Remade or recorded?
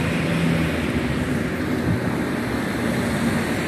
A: recorded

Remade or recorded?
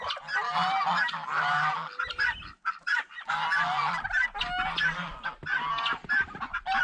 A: recorded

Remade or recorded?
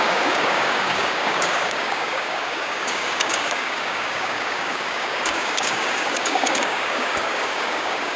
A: remade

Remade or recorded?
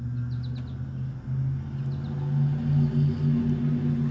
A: recorded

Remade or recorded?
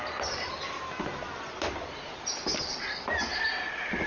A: recorded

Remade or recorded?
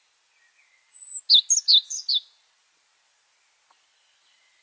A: recorded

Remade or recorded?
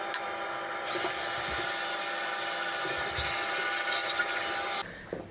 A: recorded